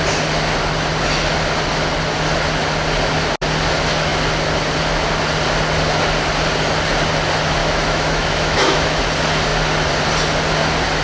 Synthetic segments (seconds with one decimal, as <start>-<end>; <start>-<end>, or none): 7.6-9.0